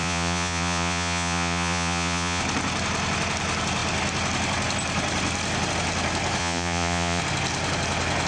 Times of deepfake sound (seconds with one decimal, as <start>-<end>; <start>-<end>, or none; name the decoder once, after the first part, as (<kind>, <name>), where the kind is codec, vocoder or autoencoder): 0.0-2.4 (vocoder, Vocos); 6.4-7.2